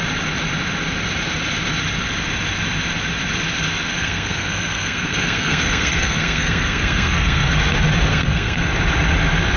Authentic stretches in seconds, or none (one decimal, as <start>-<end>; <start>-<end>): 0.0-3.9; 7.5-8.1; 8.7-9.6